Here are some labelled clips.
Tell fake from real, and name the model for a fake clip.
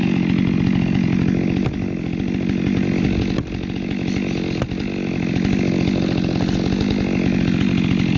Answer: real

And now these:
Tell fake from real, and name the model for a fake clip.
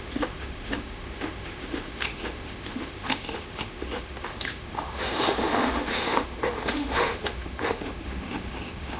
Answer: fake, autoencoder, DAC-VAE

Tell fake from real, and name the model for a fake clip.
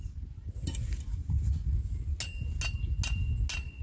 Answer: real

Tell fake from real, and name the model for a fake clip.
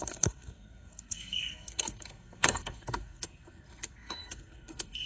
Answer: fake, codec, SNAC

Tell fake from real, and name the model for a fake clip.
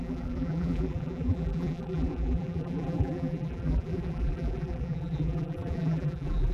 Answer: fake, vocoder, BigVGAN v2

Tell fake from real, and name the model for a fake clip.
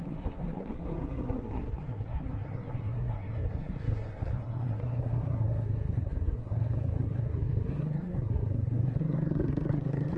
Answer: fake, codec, SNAC